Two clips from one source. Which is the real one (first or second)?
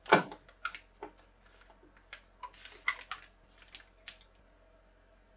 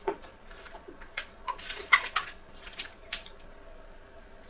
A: first